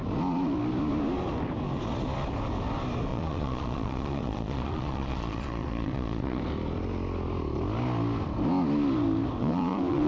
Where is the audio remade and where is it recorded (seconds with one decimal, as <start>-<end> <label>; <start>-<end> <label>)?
0.0-3.1 recorded; 3.1-6.4 remade; 6.4-9.4 recorded; 9.4-10.1 remade